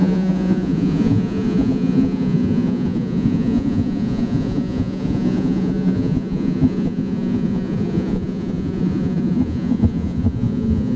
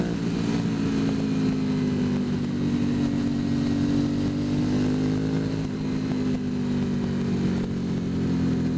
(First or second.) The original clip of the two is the second